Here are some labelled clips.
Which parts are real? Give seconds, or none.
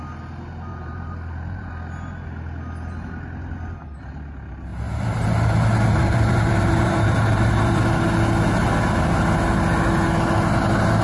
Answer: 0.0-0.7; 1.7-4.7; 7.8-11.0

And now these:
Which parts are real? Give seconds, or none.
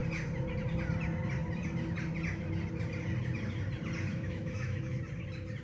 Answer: 0.0-4.1; 5.0-5.6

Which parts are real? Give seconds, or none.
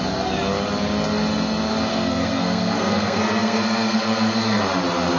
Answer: 0.0-1.9; 4.6-5.2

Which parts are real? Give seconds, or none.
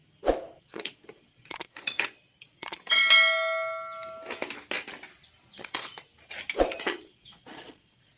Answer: 0.0-0.6; 3.0-5.5; 6.1-6.8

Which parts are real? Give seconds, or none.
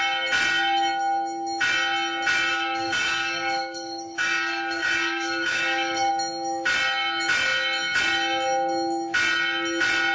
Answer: 0.0-2.5; 6.1-10.1